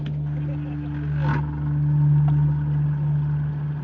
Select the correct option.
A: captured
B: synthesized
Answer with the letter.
A